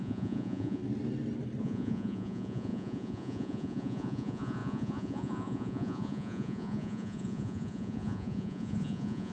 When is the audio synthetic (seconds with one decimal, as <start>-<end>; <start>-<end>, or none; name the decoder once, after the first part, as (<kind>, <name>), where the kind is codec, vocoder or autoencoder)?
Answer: 0.0-0.8 (vocoder, Vocos); 1.6-9.3